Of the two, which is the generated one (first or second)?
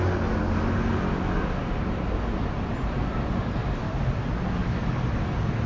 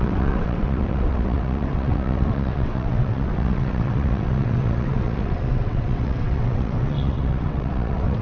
second